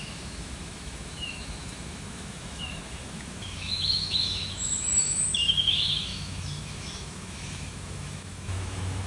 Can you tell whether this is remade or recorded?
remade